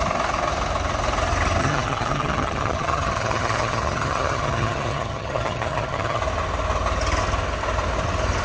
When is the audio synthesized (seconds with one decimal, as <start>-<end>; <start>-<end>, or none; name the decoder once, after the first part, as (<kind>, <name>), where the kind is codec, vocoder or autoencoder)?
1.6-6.2 (vocoder, HiFi-GAN)